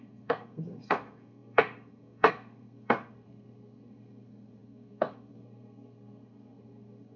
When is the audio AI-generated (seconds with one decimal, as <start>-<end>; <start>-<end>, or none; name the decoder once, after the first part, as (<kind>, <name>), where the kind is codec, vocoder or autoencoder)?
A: 0.0-7.2 (codec, SNAC)